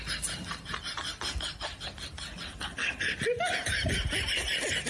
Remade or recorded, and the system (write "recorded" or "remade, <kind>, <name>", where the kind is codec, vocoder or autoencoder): recorded